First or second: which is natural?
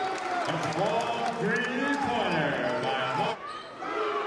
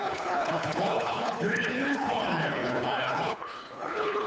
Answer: first